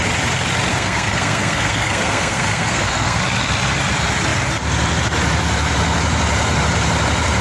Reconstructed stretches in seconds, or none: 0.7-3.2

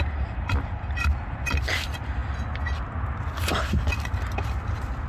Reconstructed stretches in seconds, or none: 0.0-2.2; 3.2-5.1